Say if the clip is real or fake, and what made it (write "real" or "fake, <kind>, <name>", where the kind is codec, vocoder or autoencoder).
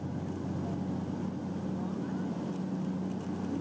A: real